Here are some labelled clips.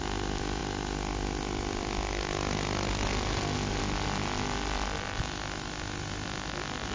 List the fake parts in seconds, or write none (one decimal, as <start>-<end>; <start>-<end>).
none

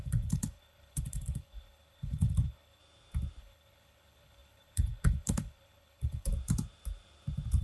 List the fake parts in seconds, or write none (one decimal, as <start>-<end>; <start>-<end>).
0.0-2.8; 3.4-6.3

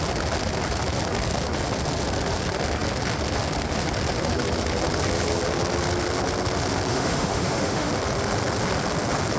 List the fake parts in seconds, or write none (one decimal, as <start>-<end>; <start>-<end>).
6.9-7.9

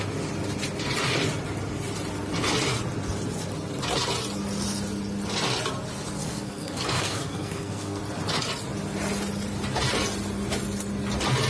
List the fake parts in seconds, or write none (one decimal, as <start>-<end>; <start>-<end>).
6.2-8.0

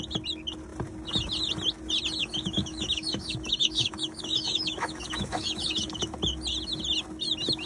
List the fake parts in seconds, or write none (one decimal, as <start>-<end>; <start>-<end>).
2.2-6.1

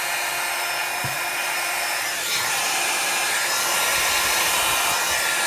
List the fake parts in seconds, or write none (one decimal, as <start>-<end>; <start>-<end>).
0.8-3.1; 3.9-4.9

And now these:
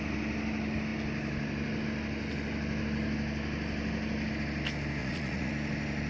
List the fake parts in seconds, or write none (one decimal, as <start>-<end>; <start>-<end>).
5.0-5.5

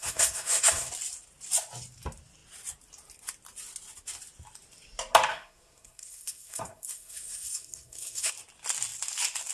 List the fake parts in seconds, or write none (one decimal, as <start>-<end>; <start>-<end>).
0.0-0.9; 5.3-8.3